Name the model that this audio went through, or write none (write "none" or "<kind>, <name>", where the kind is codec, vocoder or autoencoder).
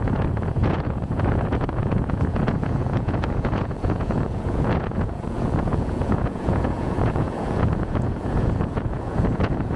vocoder, Vocos